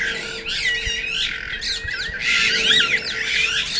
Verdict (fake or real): real